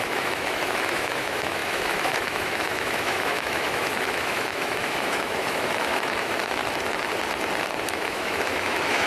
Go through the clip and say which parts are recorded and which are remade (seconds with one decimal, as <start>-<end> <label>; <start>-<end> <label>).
0.0-6.6 remade; 6.6-7.9 recorded; 7.9-9.1 remade

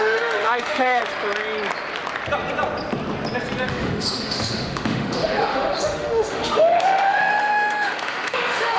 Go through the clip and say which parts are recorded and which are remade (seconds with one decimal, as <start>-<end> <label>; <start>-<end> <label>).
0.0-1.0 remade; 1.0-3.7 recorded; 3.7-8.8 remade

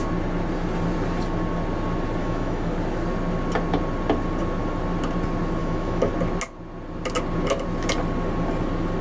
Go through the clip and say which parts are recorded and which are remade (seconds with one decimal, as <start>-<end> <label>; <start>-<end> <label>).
0.0-2.2 recorded; 2.2-2.7 remade; 2.7-5.6 recorded; 5.6-6.1 remade; 6.1-9.0 recorded

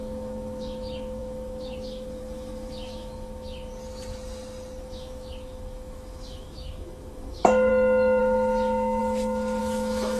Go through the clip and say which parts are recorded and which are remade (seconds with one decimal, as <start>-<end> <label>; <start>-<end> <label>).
0.0-3.7 remade; 3.7-4.8 recorded; 4.8-7.7 remade; 7.7-8.2 recorded; 8.2-9.0 remade; 9.0-9.6 recorded; 9.6-10.2 remade

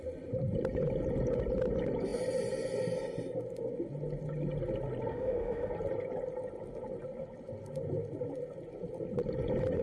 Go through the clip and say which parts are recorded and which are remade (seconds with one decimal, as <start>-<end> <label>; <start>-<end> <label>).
0.0-5.1 recorded; 5.1-5.7 remade; 5.7-9.8 recorded

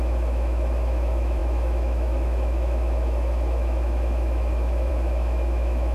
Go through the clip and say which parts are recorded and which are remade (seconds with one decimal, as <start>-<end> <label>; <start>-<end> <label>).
0.0-5.9 remade

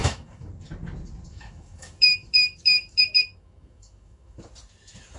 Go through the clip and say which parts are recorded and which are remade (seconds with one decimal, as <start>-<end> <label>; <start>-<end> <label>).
0.0-0.5 remade; 0.5-1.3 recorded; 1.3-4.4 remade; 4.4-5.2 recorded

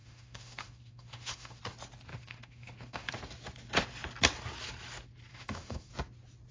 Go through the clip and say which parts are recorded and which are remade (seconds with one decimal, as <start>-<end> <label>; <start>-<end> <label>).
0.0-1.6 remade; 1.6-2.1 recorded; 2.1-3.1 remade; 3.1-5.3 recorded; 5.3-5.9 remade; 5.9-6.5 recorded